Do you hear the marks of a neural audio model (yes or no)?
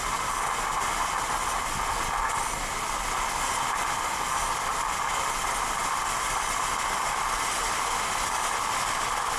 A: no